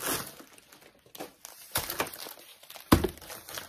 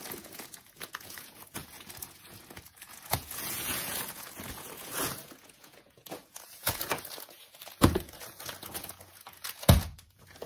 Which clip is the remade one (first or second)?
second